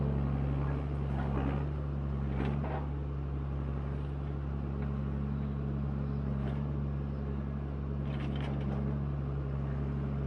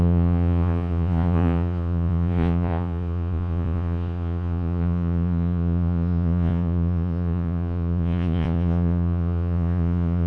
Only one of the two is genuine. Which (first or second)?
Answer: first